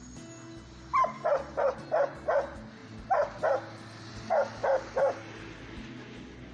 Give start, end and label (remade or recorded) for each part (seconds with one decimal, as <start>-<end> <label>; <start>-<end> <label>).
0.0-6.5 recorded